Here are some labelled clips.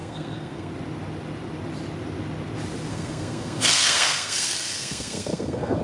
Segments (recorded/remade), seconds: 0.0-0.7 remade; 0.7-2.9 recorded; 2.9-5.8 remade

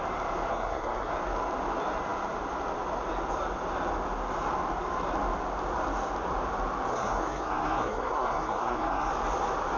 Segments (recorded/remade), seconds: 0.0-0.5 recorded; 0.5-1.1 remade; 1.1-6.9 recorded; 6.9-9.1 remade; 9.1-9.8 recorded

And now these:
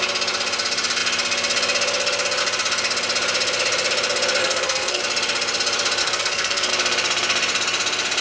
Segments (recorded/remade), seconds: 0.0-4.4 recorded; 4.4-5.0 remade; 5.0-6.0 recorded; 6.0-6.7 remade; 6.7-8.2 recorded

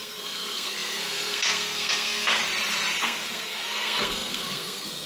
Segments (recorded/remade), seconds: 0.0-2.4 remade; 2.4-3.0 recorded; 3.0-5.1 remade